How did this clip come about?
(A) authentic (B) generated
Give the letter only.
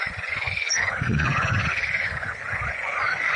B